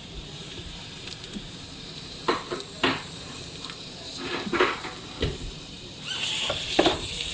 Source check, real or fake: fake